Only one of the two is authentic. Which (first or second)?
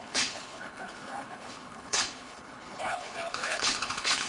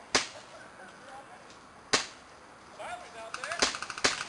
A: second